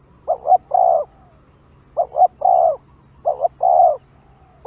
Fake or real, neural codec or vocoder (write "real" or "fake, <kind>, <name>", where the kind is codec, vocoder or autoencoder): real